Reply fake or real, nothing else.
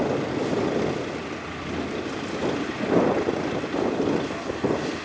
real